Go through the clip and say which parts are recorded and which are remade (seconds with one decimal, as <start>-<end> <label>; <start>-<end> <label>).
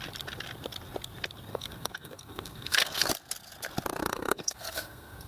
0.0-1.5 recorded; 1.5-3.1 remade; 3.1-4.0 recorded; 4.0-5.3 remade